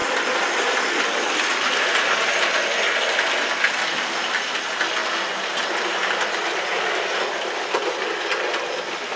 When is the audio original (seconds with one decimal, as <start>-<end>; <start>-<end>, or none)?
0.0-9.2